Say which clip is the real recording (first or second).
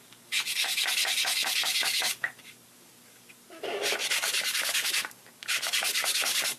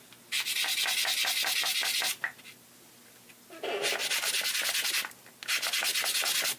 second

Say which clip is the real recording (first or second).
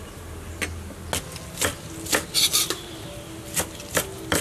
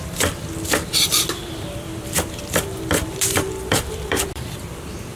first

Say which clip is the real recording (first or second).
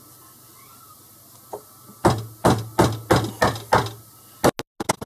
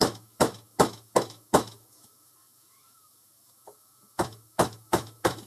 first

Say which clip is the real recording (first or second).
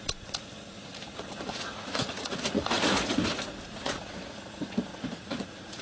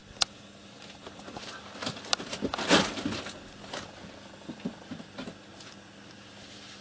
second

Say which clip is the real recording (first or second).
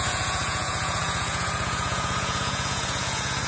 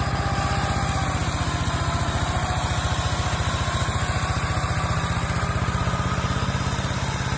second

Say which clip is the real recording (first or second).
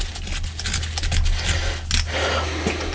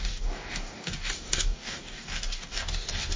first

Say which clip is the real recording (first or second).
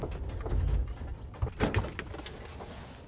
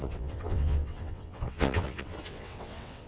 first